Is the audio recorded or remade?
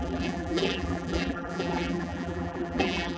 remade